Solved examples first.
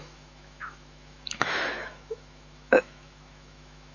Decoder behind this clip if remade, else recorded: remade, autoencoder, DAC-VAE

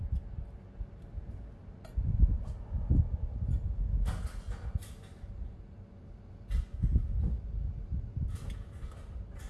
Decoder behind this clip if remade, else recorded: recorded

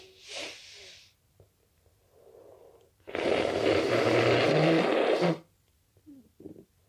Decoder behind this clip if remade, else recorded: recorded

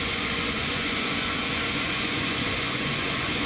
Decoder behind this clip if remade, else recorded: remade, vocoder, Vocos